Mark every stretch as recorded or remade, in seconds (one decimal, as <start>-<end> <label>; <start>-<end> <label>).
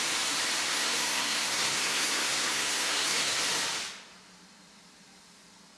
0.0-0.6 recorded; 0.6-3.4 remade; 3.4-5.8 recorded